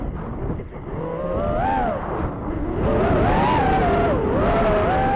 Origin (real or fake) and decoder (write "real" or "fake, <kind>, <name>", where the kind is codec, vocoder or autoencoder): real